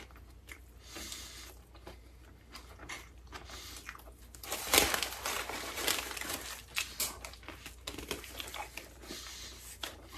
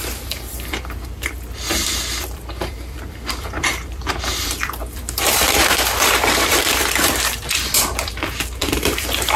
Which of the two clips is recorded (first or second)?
first